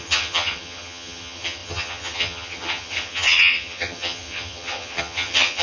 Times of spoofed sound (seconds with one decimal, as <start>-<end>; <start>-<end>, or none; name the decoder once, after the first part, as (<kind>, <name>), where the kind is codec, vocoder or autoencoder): 0.0-5.6 (vocoder, HiFi-GAN)